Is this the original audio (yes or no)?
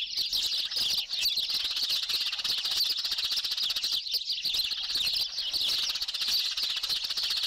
yes